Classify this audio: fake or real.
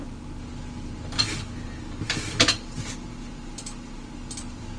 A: real